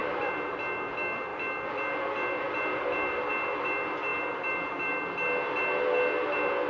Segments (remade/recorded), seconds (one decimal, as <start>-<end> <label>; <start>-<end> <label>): 0.0-6.7 recorded